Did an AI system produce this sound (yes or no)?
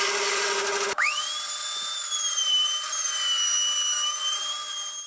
yes